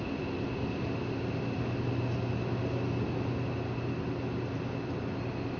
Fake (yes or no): no